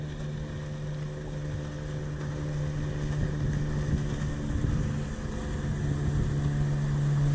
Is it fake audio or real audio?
real